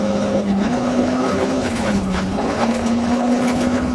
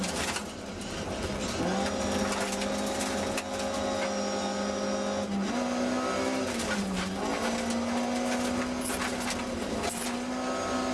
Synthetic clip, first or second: first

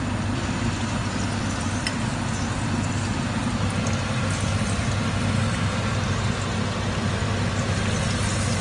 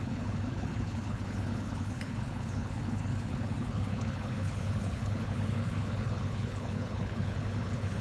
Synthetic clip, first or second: second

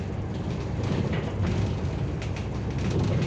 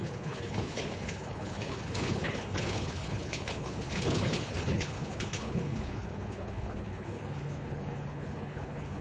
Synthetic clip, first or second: second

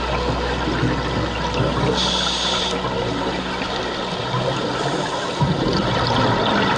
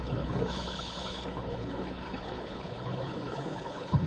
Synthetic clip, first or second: second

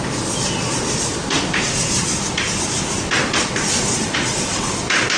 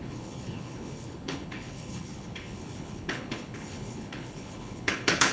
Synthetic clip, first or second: second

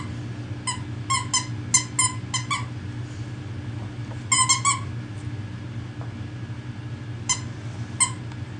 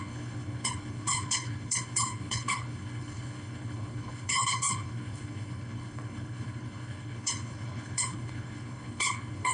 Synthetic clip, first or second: second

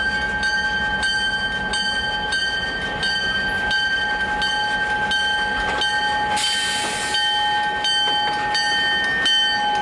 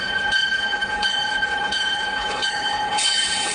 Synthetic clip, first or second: second